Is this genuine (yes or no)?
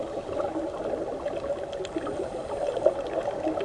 yes